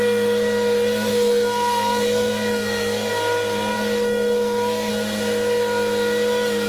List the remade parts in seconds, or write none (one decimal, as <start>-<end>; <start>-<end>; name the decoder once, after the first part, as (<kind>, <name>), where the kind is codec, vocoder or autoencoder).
1.1-3.1 (codec, SNAC); 3.7-4.9